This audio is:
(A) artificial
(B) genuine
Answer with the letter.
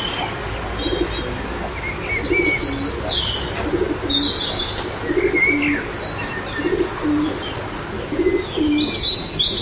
B